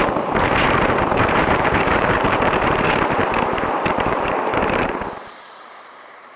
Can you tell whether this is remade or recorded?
remade